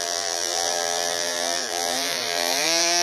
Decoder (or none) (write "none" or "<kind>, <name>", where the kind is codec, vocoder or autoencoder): vocoder, BigVGAN v2